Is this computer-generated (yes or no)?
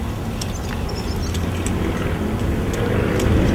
no